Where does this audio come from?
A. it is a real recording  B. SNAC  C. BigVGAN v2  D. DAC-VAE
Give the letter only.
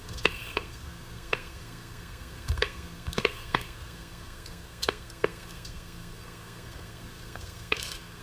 B